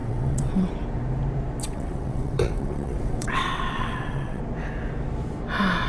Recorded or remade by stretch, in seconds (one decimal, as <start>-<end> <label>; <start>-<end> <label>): 0.0-0.7 remade; 0.7-1.6 recorded; 1.6-4.4 remade; 4.4-5.9 recorded